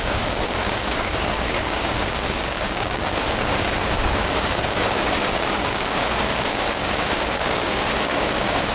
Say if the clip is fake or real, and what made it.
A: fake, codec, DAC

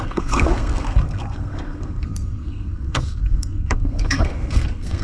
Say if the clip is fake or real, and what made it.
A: fake, codec, SNAC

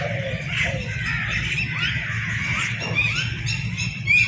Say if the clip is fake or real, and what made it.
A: real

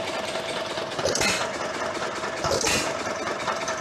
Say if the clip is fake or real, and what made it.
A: real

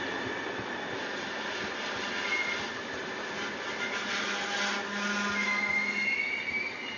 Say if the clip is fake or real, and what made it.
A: real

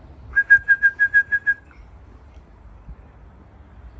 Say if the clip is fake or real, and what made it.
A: real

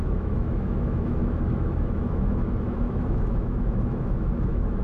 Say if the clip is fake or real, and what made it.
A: fake, autoencoder, DAC-VAE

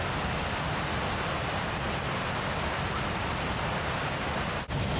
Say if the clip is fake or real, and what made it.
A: real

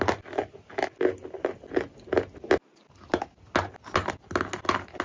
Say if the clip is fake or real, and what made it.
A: real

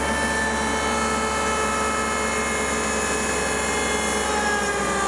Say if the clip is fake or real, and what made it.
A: real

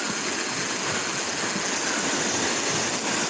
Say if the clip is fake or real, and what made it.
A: real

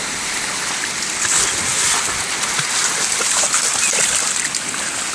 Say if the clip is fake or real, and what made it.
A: real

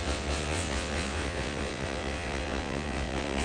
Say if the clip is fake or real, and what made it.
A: fake, vocoder, WaveNeXt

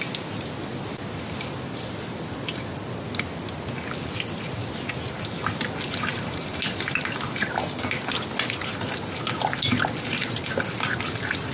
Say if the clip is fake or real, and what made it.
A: real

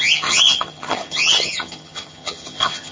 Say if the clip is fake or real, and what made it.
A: fake, vocoder, HiFi-GAN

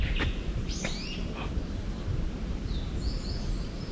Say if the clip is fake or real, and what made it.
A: real